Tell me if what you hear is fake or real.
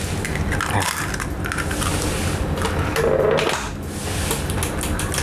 real